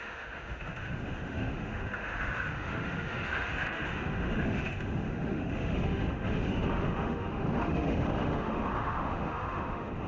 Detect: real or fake fake